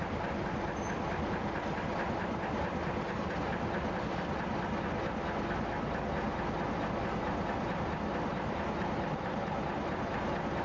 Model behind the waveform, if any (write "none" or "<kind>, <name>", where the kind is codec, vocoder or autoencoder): none